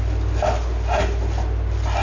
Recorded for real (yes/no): yes